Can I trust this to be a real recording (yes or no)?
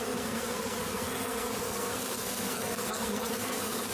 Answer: no